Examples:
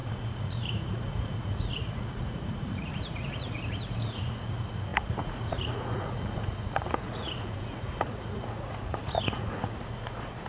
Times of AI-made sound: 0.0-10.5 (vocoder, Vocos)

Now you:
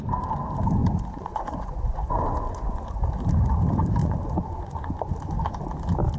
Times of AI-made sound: 0.8-3.1 (vocoder, Vocos); 4.0-5.1

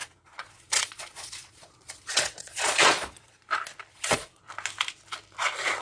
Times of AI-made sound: 0.0-3.5 (vocoder, Vocos); 3.9-4.4

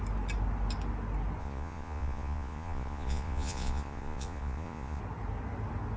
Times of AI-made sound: 1.4-5.0 (vocoder, Vocos)

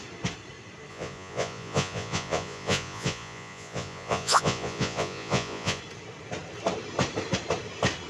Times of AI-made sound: 0.9-5.8 (vocoder, Vocos)

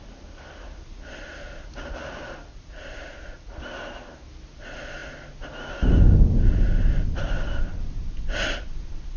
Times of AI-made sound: 2.5-3.6 (vocoder, Vocos)

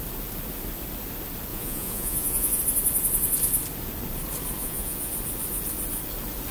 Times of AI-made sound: 1.5-2.6 (vocoder, Vocos); 4.6-5.1

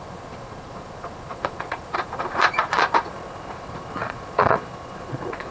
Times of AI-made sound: 0.0-5.5 (vocoder, Vocos)